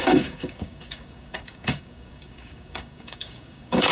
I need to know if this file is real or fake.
fake